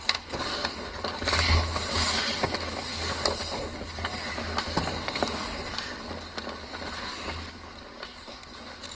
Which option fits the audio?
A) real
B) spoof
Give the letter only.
A